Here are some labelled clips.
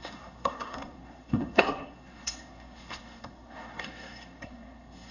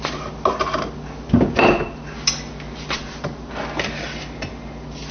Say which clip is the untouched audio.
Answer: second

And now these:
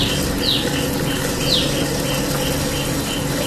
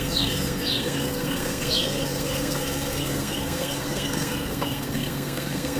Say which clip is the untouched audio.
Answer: first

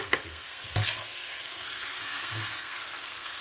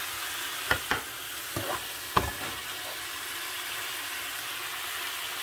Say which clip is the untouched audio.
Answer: second